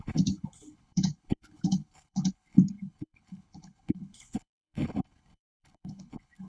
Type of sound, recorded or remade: remade